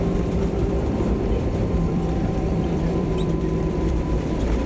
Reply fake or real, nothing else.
fake